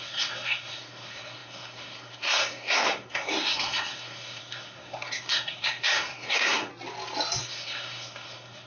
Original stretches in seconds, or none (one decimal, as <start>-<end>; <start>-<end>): 6.7-7.4